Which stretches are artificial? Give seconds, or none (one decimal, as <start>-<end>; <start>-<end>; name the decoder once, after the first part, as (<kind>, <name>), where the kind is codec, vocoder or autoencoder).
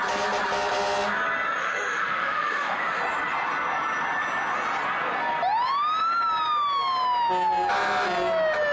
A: 1.6-3.0 (autoencoder, DAC-VAE)